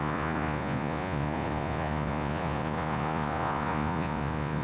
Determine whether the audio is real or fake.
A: fake